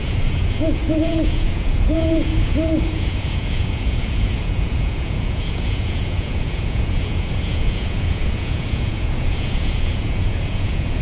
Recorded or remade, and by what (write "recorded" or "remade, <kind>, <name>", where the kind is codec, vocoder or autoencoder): remade, vocoder, Vocos